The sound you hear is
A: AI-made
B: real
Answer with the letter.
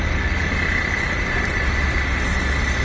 B